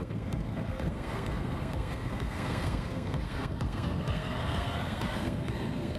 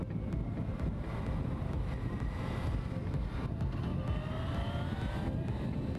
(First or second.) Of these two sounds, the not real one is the first